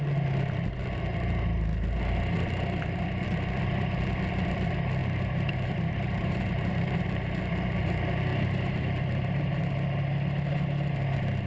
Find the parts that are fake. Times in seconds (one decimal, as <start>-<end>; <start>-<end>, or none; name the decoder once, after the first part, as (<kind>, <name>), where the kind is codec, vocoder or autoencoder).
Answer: 5.0-7.4 (vocoder, BigVGAN v2); 8.3-9.6